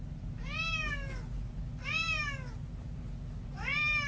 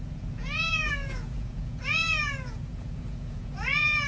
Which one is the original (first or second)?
first